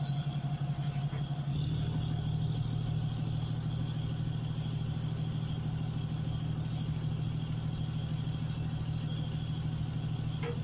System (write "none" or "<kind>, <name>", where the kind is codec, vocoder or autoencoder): none